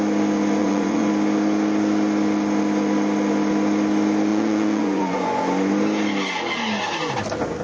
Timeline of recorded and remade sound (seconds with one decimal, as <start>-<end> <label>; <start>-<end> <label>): 0.0-0.6 recorded; 0.6-1.1 remade; 1.1-4.3 recorded; 4.3-5.4 remade; 5.4-7.6 recorded